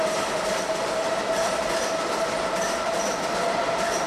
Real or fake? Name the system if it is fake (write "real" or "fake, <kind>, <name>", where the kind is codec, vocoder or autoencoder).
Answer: fake, vocoder, BigVGAN v2